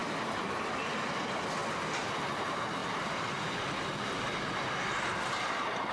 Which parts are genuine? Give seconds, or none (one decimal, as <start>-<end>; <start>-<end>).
1.2-2.8; 3.6-5.9